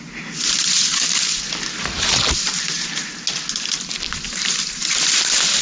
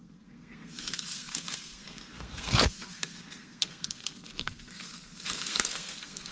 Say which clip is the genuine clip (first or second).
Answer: first